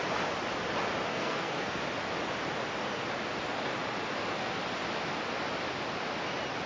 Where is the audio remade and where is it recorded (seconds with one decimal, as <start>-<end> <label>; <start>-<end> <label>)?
0.0-1.1 recorded; 1.1-1.8 remade; 1.8-6.7 recorded